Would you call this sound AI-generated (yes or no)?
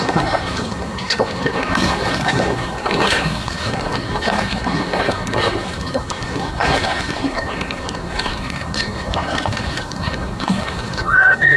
yes